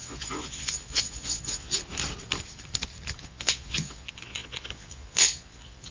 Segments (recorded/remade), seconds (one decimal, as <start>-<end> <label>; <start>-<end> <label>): 0.0-1.8 remade; 1.8-3.2 recorded; 3.2-5.9 remade